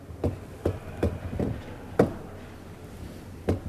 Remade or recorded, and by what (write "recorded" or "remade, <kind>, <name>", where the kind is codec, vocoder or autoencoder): remade, vocoder, BigVGAN v2